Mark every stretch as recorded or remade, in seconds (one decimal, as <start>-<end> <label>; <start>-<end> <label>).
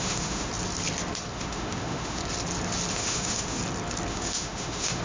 0.0-0.5 remade; 0.5-1.3 recorded; 1.3-2.2 remade; 2.2-2.9 recorded; 2.9-3.6 remade; 3.6-4.1 recorded; 4.1-5.0 remade